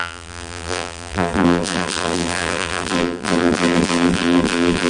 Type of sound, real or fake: fake